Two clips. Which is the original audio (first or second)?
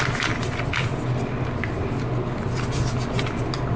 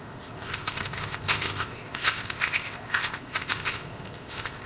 first